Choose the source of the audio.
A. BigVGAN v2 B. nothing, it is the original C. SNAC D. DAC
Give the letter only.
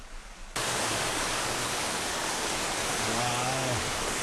D